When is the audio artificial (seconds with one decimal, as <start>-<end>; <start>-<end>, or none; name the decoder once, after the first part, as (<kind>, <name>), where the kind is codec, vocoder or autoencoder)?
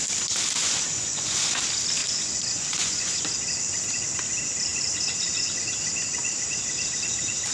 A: 0.6-1.6 (vocoder, Vocos); 2.0-3.2